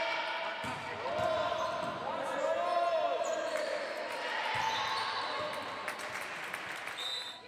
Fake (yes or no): no